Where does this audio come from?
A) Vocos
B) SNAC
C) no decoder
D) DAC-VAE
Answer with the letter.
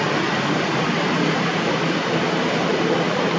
C